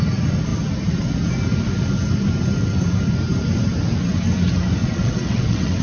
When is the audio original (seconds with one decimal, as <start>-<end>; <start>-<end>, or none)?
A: 0.0-4.8